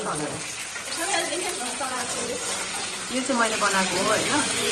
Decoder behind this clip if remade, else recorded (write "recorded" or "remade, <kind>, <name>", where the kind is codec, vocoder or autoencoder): remade, vocoder, Vocos